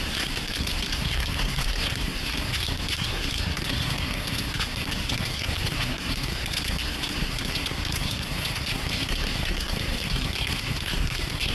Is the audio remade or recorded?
remade